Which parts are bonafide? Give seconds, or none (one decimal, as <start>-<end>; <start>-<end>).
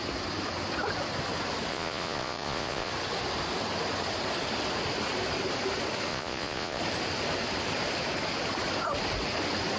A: 0.0-1.7; 2.9-6.1; 6.8-9.8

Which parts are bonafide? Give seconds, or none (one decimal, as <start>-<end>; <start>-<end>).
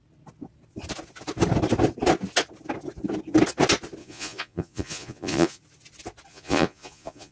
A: 0.0-4.0; 5.6-6.3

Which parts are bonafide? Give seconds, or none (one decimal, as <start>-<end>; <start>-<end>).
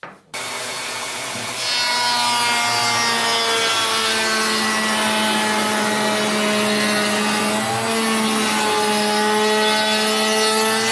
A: 0.0-0.6; 1.5-10.9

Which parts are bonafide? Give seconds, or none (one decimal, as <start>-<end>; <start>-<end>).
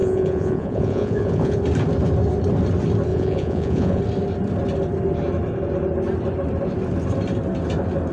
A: 1.6-3.1; 4.0-8.1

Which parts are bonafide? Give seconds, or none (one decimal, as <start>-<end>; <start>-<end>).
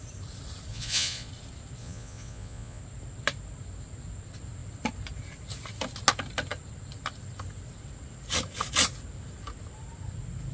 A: 0.0-0.7; 1.3-1.8; 2.8-10.5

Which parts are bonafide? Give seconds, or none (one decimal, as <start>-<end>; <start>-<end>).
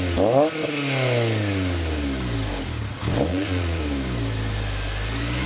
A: 0.0-3.3; 3.8-5.5